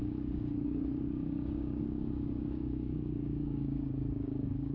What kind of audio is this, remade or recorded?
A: remade